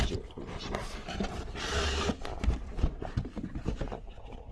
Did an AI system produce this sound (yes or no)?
no